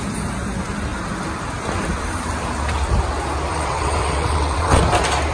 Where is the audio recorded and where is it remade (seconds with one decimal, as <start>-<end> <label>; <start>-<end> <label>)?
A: 0.0-3.5 recorded; 3.5-4.8 remade; 4.8-5.3 recorded